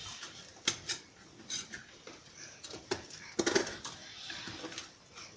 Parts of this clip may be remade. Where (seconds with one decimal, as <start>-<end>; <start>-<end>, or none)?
none